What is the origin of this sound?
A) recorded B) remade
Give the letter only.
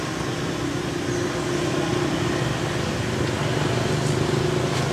A